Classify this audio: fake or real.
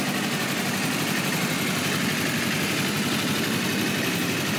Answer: real